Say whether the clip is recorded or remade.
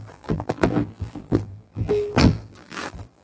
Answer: remade